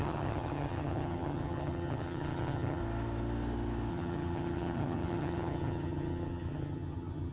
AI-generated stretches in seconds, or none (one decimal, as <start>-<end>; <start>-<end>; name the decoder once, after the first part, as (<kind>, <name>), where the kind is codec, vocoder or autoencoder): 0.0-2.8 (vocoder, HiFi-GAN); 3.9-7.3